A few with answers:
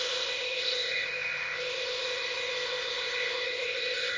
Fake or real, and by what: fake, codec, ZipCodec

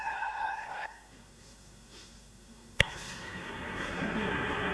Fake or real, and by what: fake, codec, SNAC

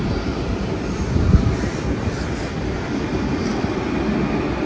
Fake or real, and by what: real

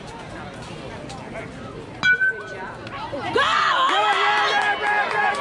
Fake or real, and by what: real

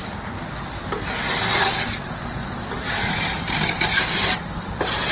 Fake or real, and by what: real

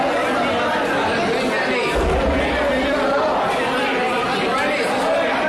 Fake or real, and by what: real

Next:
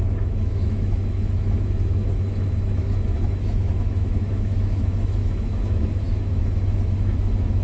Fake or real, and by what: fake, autoencoder, DAC-VAE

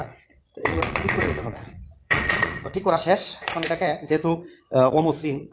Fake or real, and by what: fake, vocoder, Vocos